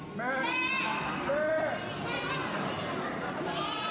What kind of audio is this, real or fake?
real